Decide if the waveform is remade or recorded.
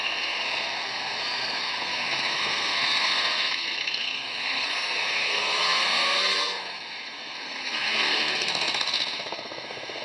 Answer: remade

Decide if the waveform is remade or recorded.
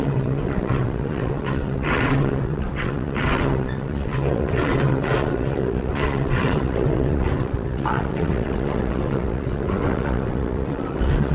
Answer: remade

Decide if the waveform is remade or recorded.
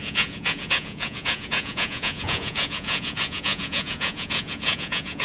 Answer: remade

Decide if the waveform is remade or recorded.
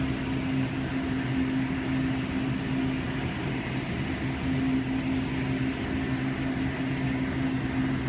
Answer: recorded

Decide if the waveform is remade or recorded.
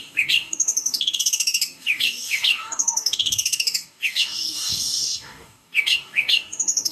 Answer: remade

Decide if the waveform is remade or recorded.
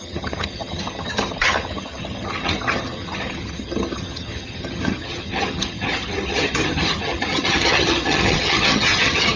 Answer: remade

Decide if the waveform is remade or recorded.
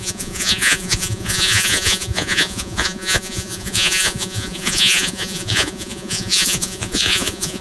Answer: remade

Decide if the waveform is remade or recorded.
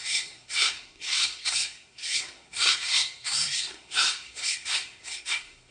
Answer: remade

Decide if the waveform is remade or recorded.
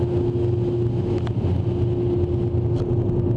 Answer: recorded